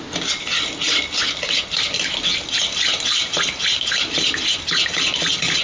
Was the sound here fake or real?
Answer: real